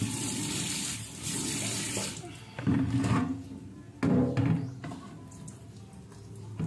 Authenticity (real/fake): real